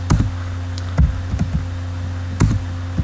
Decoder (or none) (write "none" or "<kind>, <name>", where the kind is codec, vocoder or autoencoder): none